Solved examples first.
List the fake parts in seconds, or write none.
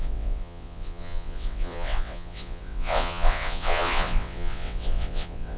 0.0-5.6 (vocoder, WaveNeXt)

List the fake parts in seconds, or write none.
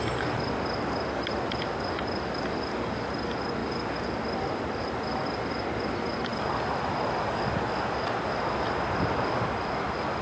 none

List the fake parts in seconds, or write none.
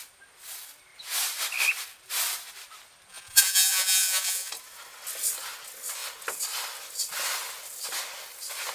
3.1-4.5 (vocoder, Vocos)